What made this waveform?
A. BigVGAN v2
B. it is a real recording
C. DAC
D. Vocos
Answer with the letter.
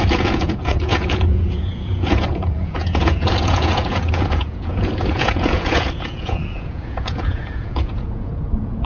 D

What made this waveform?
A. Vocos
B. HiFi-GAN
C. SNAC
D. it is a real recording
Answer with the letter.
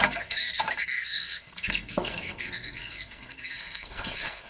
C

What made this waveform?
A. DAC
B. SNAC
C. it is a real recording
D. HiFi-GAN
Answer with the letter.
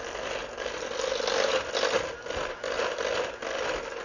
C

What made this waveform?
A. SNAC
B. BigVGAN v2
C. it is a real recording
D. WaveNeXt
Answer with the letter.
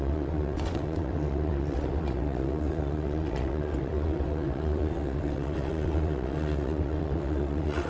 D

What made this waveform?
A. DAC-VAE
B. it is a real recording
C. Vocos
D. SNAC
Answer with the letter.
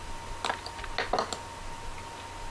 B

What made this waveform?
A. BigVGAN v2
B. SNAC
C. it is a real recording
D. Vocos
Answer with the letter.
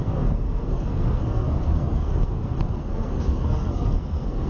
B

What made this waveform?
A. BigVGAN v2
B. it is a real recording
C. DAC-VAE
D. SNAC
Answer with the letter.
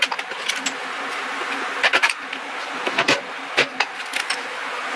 A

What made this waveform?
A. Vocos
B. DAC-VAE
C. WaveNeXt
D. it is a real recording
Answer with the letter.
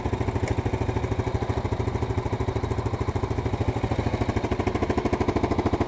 D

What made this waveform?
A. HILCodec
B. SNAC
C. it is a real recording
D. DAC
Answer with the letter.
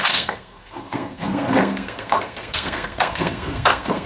B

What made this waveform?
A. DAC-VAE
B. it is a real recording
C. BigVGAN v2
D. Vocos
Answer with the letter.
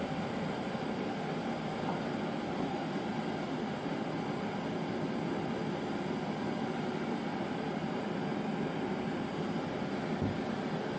B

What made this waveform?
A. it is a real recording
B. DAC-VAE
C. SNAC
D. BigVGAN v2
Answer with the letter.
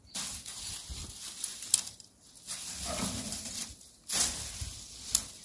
A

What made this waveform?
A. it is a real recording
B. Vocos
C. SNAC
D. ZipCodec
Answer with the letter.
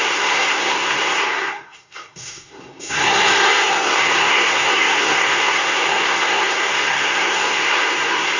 C